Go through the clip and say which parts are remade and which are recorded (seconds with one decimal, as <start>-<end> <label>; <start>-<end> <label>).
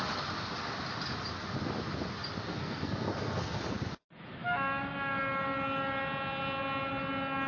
0.0-2.6 recorded; 2.6-3.6 remade; 3.6-7.5 recorded